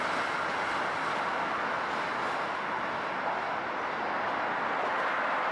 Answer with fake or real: real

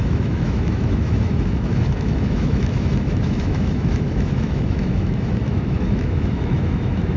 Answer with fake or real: fake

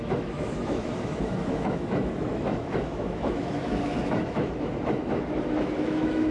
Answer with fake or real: fake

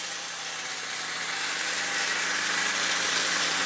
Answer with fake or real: real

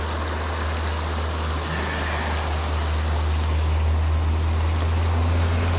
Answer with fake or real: real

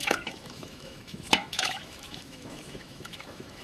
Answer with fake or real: fake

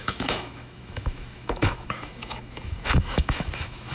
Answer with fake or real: fake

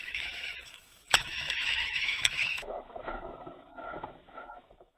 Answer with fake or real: fake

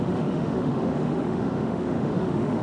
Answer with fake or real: fake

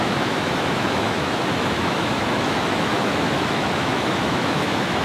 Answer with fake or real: fake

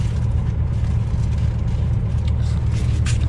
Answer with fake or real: real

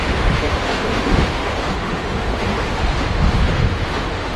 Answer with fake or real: fake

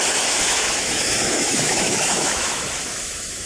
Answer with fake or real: fake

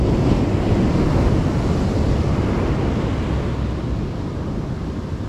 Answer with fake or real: real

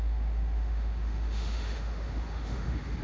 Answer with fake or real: fake